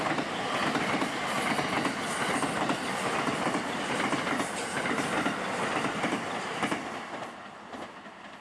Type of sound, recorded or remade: recorded